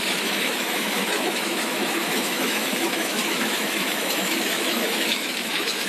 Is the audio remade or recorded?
remade